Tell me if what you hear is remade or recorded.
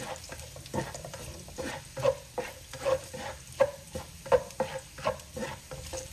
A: remade